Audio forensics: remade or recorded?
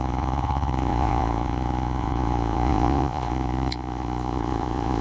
remade